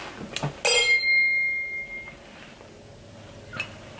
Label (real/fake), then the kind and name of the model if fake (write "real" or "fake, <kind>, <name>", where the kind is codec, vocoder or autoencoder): real